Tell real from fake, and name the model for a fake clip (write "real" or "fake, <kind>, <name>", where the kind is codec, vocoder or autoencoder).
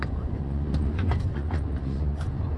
fake, vocoder, Vocos